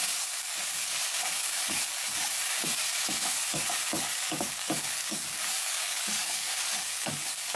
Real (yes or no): no